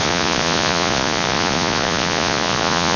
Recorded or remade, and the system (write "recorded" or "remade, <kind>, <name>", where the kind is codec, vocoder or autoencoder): remade, vocoder, Vocos